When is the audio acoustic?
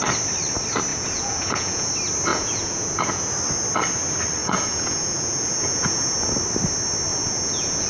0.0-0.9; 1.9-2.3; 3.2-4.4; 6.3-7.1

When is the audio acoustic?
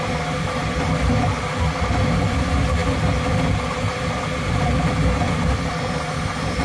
0.0-6.6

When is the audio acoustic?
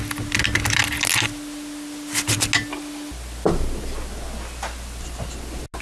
0.0-5.8